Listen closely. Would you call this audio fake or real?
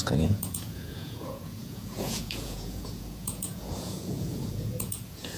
fake